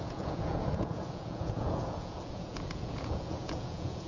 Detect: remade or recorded remade